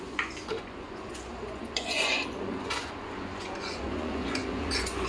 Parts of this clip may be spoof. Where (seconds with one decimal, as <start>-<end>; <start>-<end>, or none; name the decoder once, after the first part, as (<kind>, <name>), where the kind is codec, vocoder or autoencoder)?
0.0-5.1 (vocoder, Vocos)

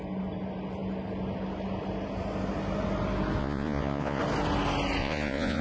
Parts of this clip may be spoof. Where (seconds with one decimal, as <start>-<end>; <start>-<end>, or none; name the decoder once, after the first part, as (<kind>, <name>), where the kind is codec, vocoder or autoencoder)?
3.4-4.2 (vocoder, Vocos); 5.0-5.6

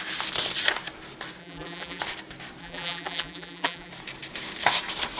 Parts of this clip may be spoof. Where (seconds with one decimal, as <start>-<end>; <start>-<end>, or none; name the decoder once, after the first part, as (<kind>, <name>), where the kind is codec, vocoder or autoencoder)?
1.4-2.0 (vocoder, BigVGAN v2); 2.6-3.9

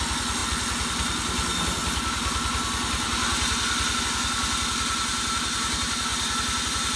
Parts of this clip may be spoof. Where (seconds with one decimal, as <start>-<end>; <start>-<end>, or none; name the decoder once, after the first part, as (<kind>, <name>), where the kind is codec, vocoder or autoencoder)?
6.1-7.0 (vocoder, BigVGAN v2)

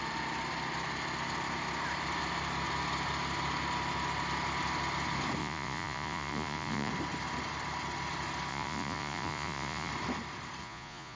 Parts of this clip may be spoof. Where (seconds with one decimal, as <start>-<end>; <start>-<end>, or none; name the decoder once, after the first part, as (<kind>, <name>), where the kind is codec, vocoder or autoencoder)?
5.4-6.9 (vocoder, Vocos); 8.5-9.9; 10.6-11.2